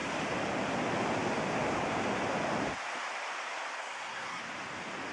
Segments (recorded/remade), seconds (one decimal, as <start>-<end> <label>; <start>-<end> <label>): 0.0-3.8 recorded; 3.8-4.4 remade; 4.4-5.1 recorded